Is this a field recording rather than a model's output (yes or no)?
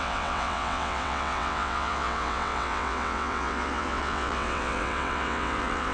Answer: no